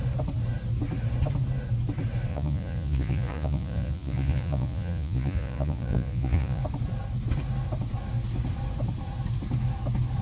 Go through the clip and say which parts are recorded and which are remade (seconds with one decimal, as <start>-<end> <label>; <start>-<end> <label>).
0.0-2.3 recorded; 2.3-6.6 remade; 6.6-10.2 recorded